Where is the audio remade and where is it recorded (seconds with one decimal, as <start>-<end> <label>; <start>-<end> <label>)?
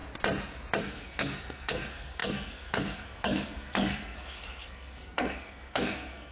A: 0.0-0.8 recorded; 0.8-6.3 remade